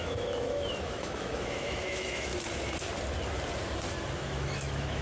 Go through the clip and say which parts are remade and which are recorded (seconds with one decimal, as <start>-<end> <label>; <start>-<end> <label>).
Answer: 0.0-2.3 remade; 2.3-4.2 recorded; 4.2-5.0 remade